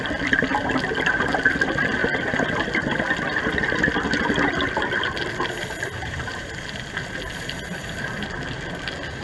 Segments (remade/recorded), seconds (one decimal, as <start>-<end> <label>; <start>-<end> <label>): 0.0-6.0 recorded; 6.0-6.5 remade; 6.5-9.2 recorded